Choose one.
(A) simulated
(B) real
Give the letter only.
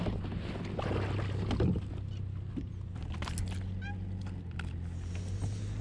B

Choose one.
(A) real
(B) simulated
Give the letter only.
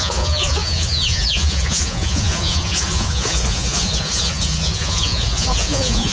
B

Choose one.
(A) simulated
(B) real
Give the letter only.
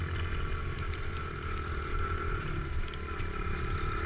A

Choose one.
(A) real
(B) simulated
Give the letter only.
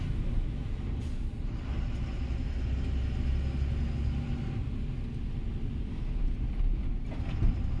A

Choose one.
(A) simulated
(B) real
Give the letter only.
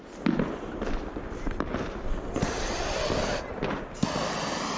B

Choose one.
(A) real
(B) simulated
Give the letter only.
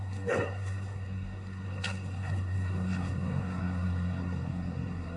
B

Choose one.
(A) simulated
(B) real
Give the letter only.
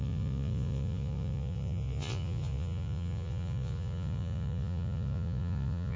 A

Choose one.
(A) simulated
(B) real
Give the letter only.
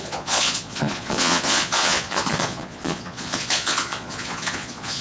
A